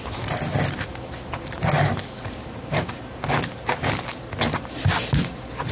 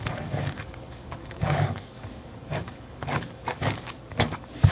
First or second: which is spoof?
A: second